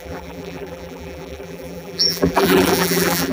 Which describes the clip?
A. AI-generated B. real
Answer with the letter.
A